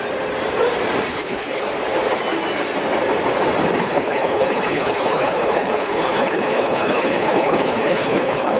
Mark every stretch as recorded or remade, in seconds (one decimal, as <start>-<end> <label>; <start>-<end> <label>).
0.0-1.1 recorded; 1.1-1.6 remade; 1.6-3.8 recorded; 3.8-8.6 remade